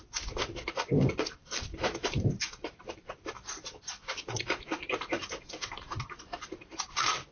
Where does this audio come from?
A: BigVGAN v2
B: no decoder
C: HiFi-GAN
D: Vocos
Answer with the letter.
A